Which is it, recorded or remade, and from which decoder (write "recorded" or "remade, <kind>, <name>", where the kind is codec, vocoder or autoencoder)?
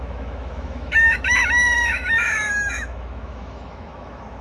remade, autoencoder, DAC-VAE